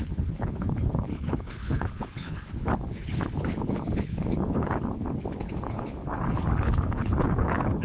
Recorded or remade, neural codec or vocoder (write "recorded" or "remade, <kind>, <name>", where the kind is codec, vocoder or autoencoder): remade, codec, HILCodec